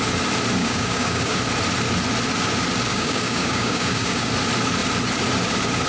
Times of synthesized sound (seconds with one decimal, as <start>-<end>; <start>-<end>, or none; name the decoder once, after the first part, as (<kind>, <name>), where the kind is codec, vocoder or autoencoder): 0.6-1.4 (codec, DAC); 2.9-4.3